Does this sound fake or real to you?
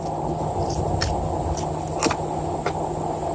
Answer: real